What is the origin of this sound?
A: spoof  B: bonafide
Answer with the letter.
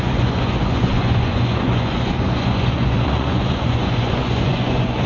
A